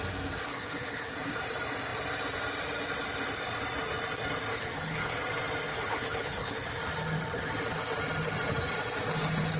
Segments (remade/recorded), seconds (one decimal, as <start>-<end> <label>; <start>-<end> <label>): 0.0-0.5 recorded; 0.5-1.1 remade; 1.1-4.5 recorded; 4.5-5.2 remade; 5.2-5.7 recorded; 5.7-6.7 remade; 6.7-9.6 recorded